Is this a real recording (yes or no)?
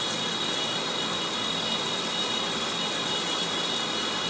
yes